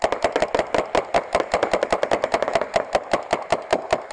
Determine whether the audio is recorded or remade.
recorded